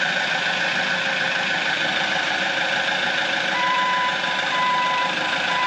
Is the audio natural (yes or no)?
no